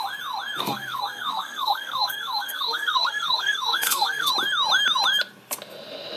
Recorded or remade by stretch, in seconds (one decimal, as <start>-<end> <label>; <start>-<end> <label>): 0.0-0.6 recorded; 0.6-4.3 remade; 4.3-6.2 recorded